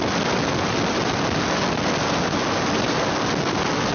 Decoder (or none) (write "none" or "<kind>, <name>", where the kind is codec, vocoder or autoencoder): none